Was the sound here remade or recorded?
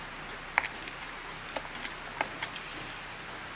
recorded